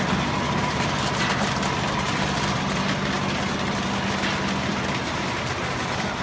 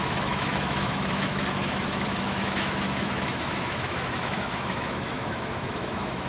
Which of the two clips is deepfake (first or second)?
second